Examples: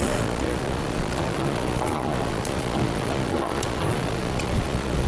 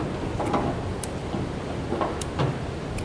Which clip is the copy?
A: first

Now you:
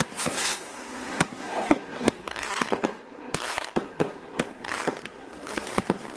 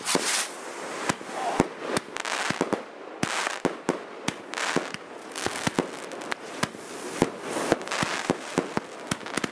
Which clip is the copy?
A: first